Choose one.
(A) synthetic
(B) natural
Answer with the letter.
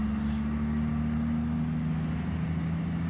B